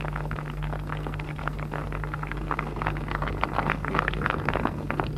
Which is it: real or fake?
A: fake